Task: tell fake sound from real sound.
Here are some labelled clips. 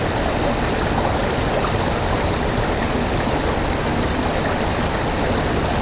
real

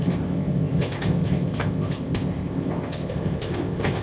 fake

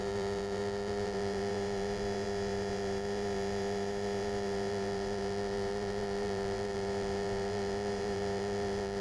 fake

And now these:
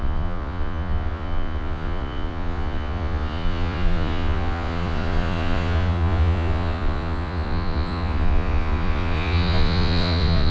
fake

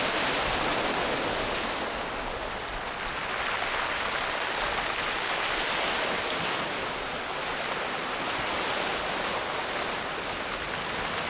real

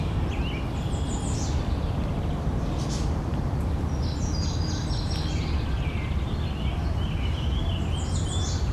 real